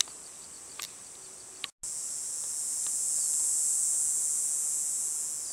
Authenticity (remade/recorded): recorded